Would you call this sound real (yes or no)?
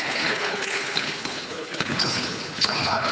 no